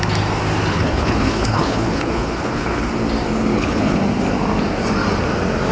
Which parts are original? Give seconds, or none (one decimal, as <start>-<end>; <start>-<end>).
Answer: 0.0-0.7; 2.9-3.5; 4.0-5.7